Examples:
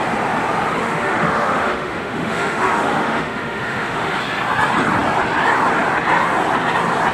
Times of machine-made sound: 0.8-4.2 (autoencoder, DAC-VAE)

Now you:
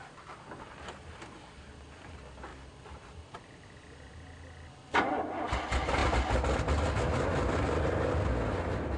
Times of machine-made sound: 2.5-3.6 (vocoder, BigVGAN v2)

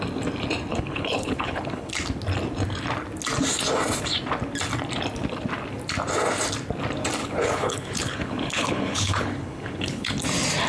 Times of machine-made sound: 0.7-1.9 (codec, HILCodec); 7.2-10.1

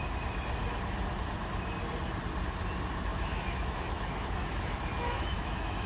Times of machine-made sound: 3.1-5.9 (autoencoder, DAC-VAE)

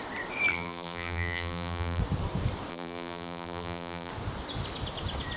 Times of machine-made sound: 0.5-2.0 (vocoder, BigVGAN v2); 2.7-4.1

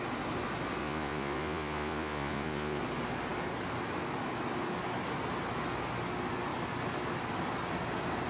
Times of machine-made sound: 0.8-2.8 (vocoder, Vocos)